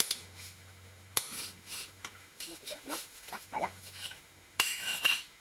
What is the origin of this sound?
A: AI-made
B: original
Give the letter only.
A